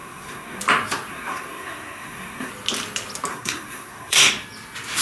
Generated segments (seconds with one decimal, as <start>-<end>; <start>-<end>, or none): 0.0-0.6; 1.1-2.5; 3.3-4.3